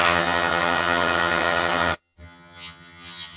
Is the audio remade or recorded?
remade